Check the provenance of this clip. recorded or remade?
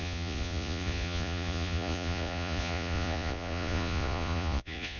remade